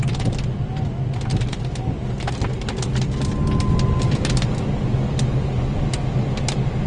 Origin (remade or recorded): recorded